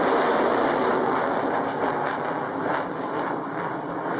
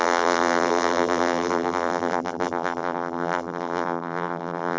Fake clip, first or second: second